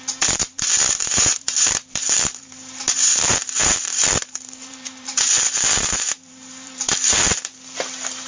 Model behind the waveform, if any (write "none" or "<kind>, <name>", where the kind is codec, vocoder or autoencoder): vocoder, BigVGAN v2